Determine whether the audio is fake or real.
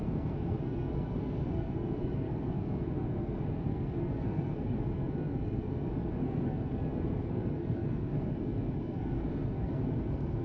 fake